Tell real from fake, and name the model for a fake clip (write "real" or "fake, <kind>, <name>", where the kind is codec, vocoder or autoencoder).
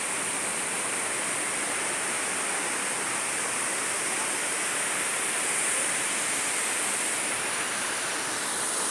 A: real